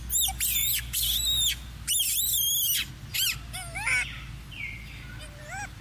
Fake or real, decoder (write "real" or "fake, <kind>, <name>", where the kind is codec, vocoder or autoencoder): real